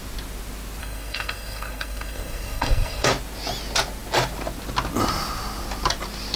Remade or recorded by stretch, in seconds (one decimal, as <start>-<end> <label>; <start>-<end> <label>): 0.0-0.8 recorded; 0.8-3.1 remade; 3.1-6.4 recorded